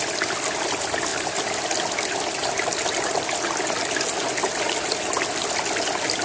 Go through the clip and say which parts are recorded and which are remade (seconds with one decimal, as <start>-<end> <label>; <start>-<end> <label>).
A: 0.0-6.2 recorded